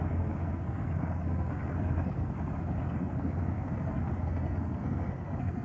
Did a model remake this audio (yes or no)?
yes